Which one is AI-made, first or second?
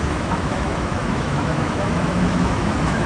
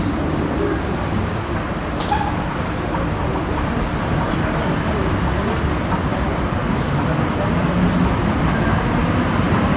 first